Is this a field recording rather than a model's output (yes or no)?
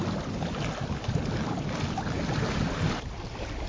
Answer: yes